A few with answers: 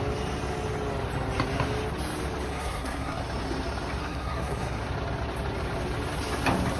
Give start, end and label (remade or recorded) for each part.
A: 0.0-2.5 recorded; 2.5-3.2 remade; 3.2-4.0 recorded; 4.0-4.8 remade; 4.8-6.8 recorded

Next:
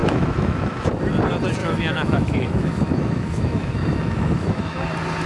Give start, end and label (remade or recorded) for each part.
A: 0.0-0.9 remade; 0.9-1.6 recorded; 1.6-4.8 remade; 4.8-5.3 recorded

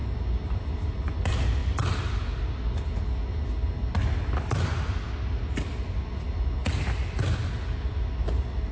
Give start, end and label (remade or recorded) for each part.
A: 0.0-8.7 recorded

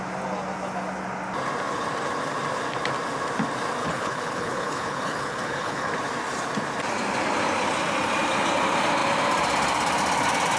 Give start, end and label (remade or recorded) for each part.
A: 0.0-3.8 recorded; 3.8-5.9 remade; 5.9-10.6 recorded